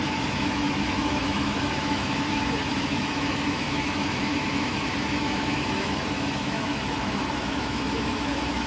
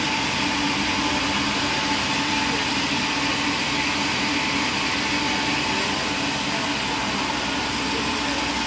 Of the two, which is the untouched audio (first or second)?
second